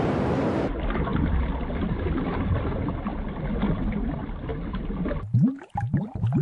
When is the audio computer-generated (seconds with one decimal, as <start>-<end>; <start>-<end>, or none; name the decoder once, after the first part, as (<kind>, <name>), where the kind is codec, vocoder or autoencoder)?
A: none